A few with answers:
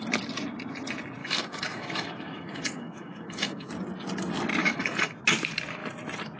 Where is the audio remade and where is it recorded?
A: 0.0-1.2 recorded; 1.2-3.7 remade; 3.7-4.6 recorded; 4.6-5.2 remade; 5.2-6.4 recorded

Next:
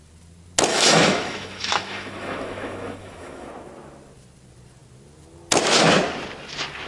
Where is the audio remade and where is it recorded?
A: 0.0-0.7 recorded; 0.7-3.5 remade; 3.5-6.9 recorded

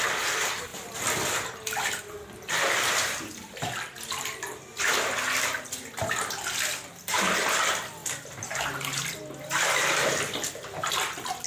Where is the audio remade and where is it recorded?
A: 0.0-11.5 recorded

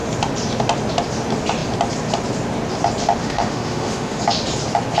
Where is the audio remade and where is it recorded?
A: 0.0-3.2 recorded; 3.2-4.2 remade; 4.2-5.0 recorded

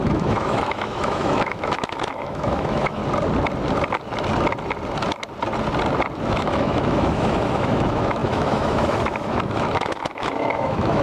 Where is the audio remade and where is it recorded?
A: 0.0-3.0 remade; 3.0-6.2 recorded; 6.2-11.0 remade

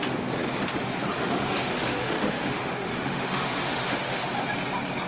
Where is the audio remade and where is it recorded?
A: 0.0-1.1 recorded; 1.1-4.2 remade; 4.2-5.1 recorded

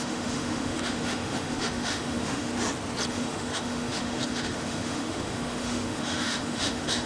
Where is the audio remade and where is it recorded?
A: 0.0-2.5 remade; 2.5-3.1 recorded; 3.1-7.1 remade